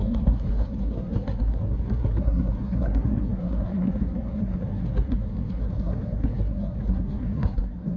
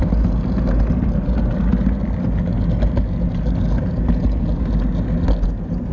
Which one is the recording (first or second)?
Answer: second